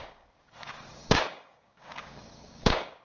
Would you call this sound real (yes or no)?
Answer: no